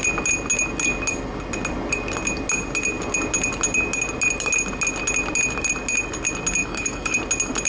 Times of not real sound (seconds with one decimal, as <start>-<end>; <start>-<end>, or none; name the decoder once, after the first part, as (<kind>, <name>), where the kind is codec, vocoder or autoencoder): 6.6-7.2 (codec, DAC)